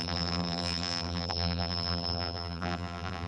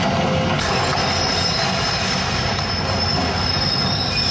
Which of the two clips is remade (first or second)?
first